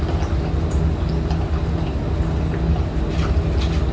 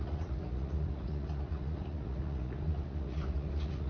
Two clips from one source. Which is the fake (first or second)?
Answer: second